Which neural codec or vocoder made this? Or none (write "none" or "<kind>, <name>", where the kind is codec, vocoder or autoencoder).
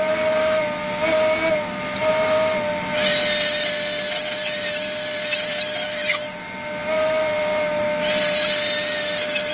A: none